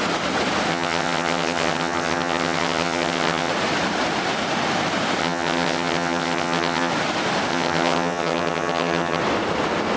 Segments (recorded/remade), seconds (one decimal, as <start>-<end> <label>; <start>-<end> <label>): 0.0-0.7 recorded; 0.7-3.5 remade; 3.5-5.2 recorded; 5.2-6.9 remade; 6.9-7.5 recorded; 7.5-9.2 remade; 9.2-10.0 recorded